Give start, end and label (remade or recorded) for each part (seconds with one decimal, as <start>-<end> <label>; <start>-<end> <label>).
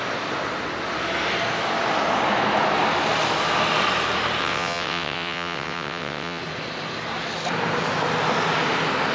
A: 0.0-4.4 recorded; 4.4-6.4 remade; 6.4-9.1 recorded